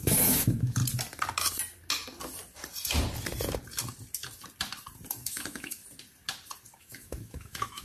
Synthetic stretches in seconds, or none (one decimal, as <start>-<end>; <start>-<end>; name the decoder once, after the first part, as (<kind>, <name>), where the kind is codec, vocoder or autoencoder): 0.0-0.8 (autoencoder, DAC-VAE); 5.1-5.8; 6.8-7.8